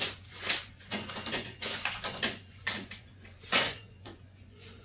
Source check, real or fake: fake